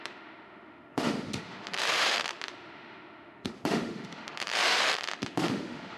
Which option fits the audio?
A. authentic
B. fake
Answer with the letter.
B